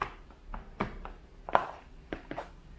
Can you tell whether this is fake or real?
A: real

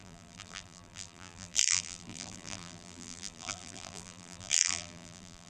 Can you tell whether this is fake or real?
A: fake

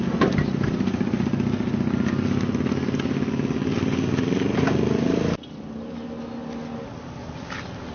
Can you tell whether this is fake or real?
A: real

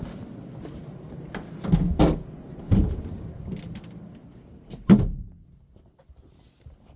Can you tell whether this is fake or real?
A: real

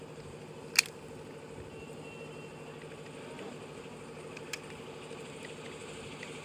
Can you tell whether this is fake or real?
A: real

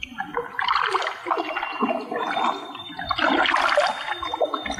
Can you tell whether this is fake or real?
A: real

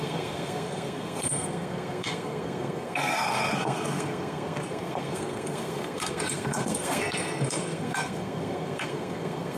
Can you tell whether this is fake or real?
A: fake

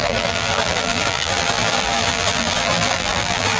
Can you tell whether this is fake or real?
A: fake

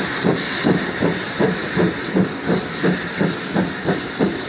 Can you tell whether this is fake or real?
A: real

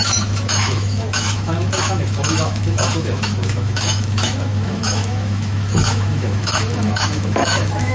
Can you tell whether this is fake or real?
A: fake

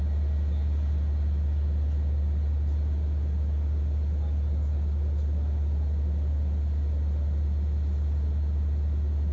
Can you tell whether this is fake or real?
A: real